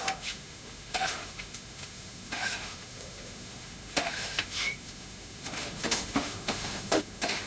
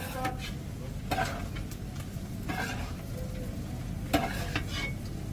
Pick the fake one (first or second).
first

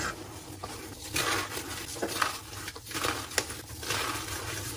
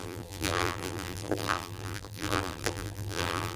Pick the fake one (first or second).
second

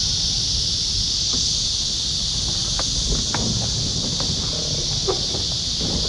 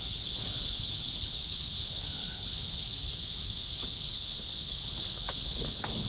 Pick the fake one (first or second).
second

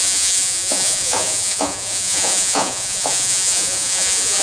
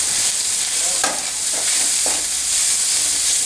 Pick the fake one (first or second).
first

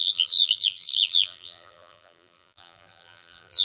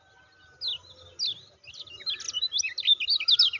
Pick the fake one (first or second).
first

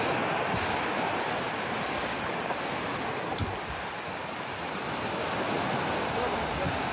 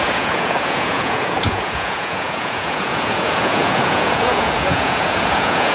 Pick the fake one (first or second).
second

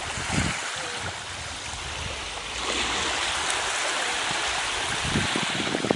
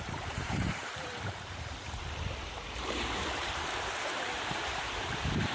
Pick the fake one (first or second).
second